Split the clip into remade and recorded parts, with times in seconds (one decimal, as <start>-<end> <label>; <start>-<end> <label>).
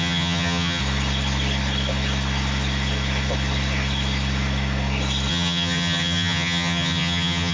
0.0-0.8 remade; 0.8-5.3 recorded; 5.3-7.5 remade